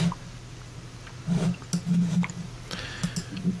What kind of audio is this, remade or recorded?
recorded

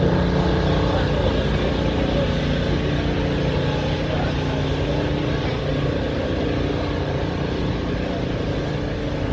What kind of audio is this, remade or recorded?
recorded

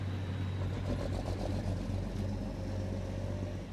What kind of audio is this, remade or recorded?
recorded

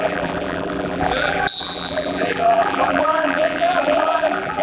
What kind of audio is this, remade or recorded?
remade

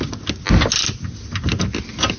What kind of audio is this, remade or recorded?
recorded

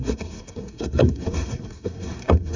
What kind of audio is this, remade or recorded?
remade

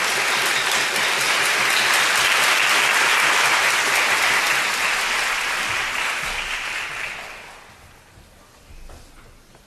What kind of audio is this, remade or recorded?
recorded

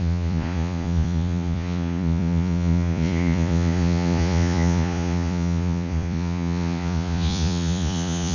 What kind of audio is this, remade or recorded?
remade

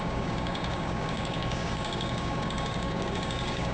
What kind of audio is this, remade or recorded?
remade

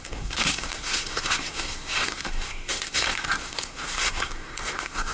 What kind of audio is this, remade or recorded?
remade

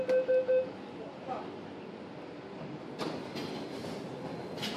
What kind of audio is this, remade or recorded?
recorded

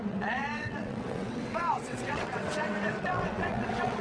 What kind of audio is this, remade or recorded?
remade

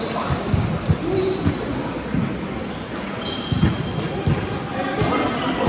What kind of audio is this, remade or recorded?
recorded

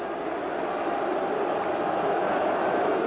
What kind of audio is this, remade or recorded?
recorded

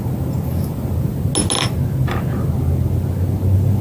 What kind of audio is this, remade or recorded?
recorded